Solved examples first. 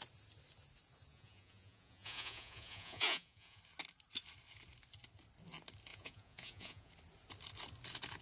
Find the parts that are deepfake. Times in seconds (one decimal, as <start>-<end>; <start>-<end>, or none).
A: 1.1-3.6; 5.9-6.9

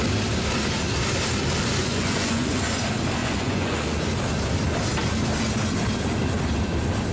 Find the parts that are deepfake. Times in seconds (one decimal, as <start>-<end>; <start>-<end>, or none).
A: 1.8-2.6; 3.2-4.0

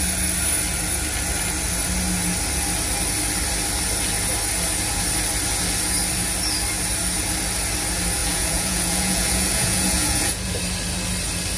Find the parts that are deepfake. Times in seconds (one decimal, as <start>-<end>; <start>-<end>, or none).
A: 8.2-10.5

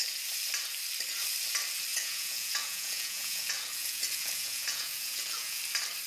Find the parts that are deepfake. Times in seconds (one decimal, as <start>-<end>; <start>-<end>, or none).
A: 1.9-5.6

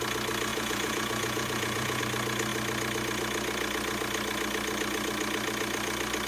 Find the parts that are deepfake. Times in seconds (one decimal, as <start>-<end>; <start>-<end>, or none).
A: 0.5-2.0

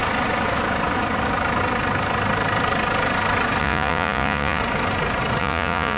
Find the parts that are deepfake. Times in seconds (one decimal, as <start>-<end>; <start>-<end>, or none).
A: 3.6-4.6; 5.4-6.0

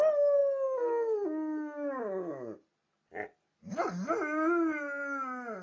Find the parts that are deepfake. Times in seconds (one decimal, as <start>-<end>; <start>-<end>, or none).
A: none

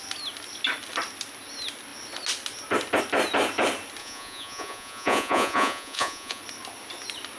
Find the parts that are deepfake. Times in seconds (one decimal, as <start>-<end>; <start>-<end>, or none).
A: 4.0-6.4